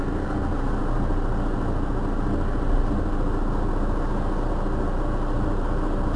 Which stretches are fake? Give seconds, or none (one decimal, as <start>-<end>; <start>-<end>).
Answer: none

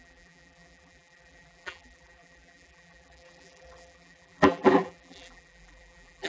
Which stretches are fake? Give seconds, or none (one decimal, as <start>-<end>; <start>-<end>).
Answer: 0.0-6.3

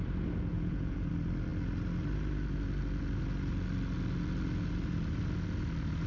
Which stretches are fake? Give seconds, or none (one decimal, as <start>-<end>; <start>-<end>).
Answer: 0.5-1.1